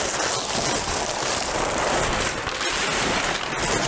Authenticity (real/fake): real